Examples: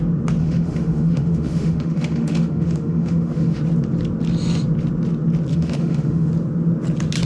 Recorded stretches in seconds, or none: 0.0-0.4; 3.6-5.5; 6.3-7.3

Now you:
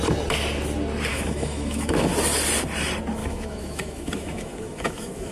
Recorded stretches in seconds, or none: 0.0-1.1; 2.1-3.2